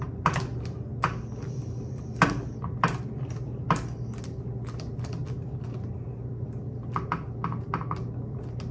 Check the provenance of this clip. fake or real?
real